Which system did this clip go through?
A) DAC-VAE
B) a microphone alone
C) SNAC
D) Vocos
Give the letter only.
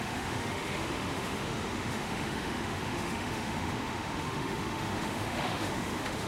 A